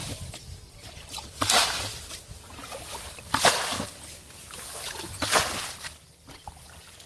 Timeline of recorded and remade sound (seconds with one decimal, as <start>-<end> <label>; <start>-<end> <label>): 0.0-7.1 recorded